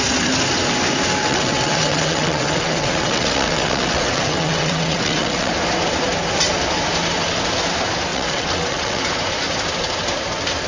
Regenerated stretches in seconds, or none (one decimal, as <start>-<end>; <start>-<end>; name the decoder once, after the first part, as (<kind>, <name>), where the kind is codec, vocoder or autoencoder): 1.2-5.5 (vocoder, WaveNeXt); 8.1-9.0